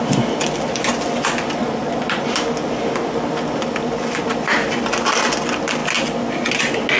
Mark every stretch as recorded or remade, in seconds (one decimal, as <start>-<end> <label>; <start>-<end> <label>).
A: 0.0-1.6 recorded; 1.6-2.2 remade; 2.2-7.0 recorded